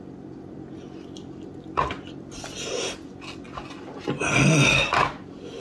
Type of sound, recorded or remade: recorded